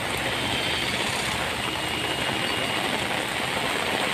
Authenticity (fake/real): real